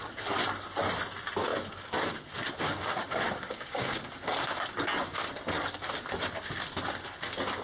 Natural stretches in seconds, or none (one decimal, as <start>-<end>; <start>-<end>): 0.0-2.8; 4.2-7.6